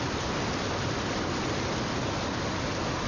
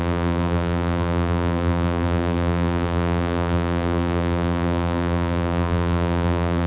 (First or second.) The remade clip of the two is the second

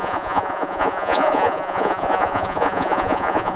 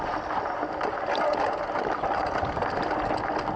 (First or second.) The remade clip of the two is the first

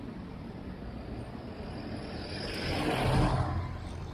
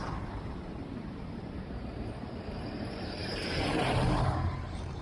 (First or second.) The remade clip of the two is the second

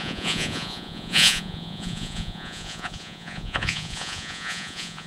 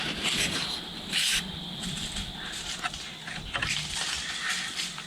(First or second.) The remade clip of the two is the first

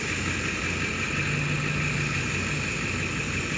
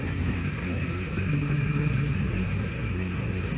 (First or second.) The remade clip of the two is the second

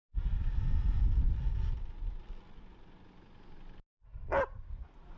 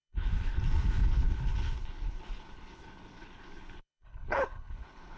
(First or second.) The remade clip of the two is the second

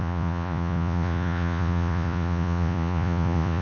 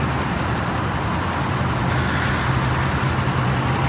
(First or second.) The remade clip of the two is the first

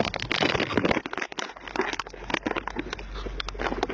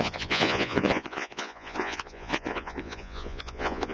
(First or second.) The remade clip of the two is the second